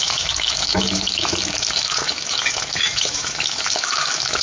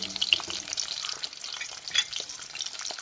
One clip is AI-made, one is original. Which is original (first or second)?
second